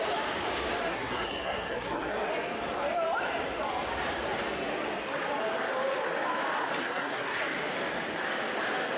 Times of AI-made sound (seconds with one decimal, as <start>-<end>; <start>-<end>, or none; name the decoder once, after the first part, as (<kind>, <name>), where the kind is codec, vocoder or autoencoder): 0.8-2.3 (codec, SNAC); 6.8-7.4